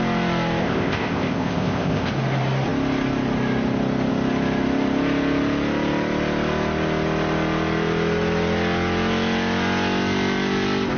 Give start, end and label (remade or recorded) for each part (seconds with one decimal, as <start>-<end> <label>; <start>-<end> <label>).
0.0-0.6 recorded; 0.6-2.1 remade; 2.1-11.0 recorded